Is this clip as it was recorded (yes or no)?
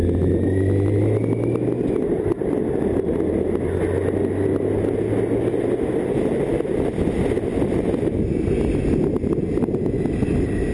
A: yes